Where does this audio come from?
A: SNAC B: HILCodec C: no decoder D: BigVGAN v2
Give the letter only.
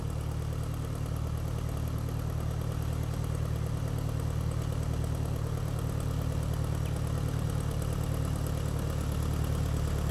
C